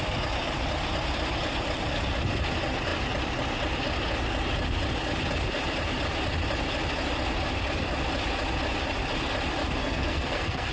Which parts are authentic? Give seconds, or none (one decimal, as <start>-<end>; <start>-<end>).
0.0-9.8